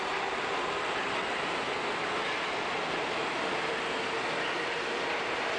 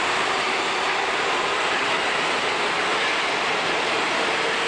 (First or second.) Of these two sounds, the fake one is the second